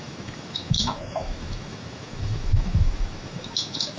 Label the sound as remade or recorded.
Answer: remade